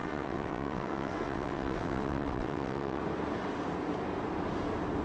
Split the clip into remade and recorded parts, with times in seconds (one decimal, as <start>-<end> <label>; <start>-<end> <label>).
0.0-3.0 remade; 3.0-5.0 recorded